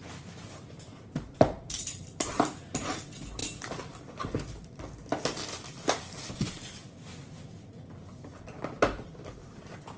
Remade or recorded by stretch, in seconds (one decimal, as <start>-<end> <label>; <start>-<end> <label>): 0.0-2.3 remade; 2.3-10.0 recorded